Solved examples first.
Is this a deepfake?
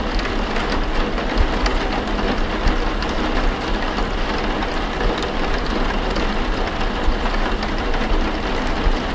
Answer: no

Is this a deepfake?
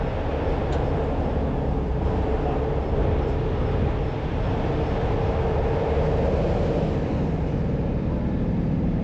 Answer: no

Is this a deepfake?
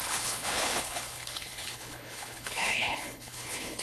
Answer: yes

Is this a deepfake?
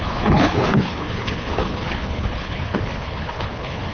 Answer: yes